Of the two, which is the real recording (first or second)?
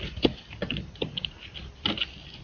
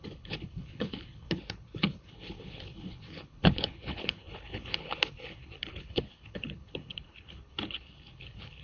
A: first